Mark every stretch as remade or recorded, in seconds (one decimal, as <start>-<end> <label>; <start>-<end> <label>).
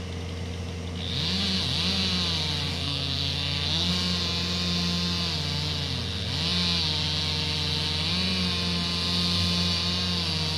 0.0-2.7 recorded; 2.7-3.9 remade; 3.9-10.6 recorded